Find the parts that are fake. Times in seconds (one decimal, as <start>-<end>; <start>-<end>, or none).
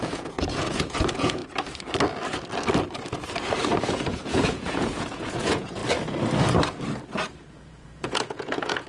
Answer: 0.0-1.4; 3.8-5.8; 7.5-8.9